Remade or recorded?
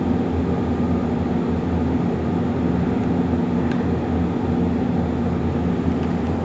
recorded